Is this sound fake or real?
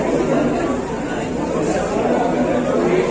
real